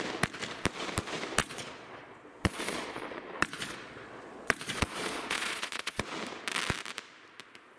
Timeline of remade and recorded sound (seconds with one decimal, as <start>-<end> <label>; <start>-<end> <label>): 0.0-1.4 recorded; 1.4-6.0 remade; 6.0-7.8 recorded